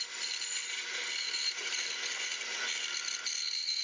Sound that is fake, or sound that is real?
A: real